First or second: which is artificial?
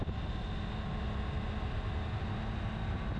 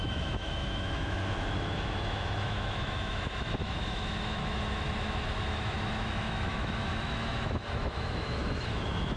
second